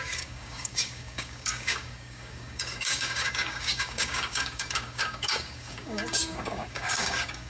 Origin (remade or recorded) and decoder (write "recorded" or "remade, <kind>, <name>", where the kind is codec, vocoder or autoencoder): remade, codec, DAC